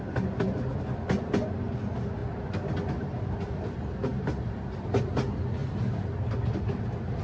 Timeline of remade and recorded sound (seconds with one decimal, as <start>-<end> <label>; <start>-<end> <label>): 0.0-7.2 recorded